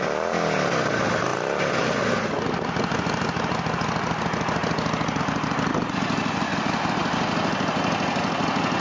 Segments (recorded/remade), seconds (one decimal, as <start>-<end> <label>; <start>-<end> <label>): 0.0-8.8 recorded